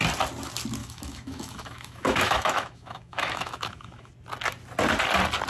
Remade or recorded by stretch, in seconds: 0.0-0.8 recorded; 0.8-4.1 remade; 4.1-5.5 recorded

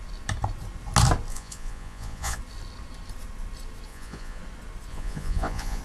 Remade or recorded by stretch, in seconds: 0.0-1.3 recorded; 1.3-2.4 remade; 2.4-3.9 recorded; 3.9-4.4 remade; 4.4-4.9 recorded; 4.9-5.8 remade

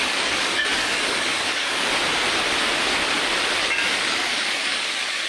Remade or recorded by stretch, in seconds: 0.0-1.9 remade; 1.9-3.6 recorded; 3.6-5.3 remade

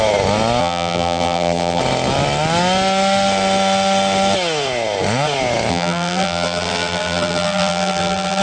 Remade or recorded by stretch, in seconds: 0.0-0.6 recorded; 0.6-1.8 remade; 1.8-5.7 recorded; 5.7-8.4 remade

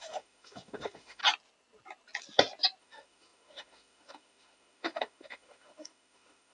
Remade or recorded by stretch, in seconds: 0.0-1.2 remade; 1.2-2.8 recorded; 2.8-6.5 remade

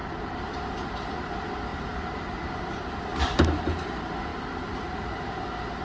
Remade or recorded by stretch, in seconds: 0.0-1.7 recorded; 1.7-3.0 remade; 3.0-4.3 recorded; 4.3-5.2 remade; 5.2-5.8 recorded